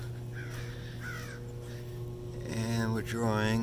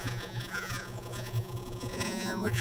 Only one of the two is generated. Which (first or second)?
second